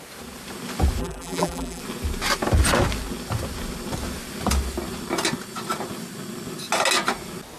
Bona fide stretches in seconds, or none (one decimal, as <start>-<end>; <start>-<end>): 0.0-1.0; 1.8-7.6